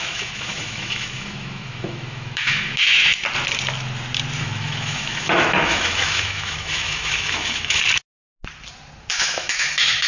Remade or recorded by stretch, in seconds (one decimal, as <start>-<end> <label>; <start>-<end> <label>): 0.0-3.1 remade; 3.1-4.4 recorded; 4.4-7.8 remade; 7.8-9.1 recorded; 9.1-10.1 remade